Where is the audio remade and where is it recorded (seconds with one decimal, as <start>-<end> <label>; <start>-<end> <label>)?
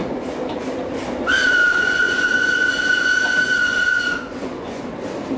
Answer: 0.0-1.6 recorded; 1.6-4.8 remade; 4.8-5.4 recorded